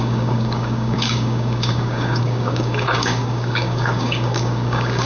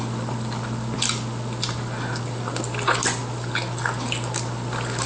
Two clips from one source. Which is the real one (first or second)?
second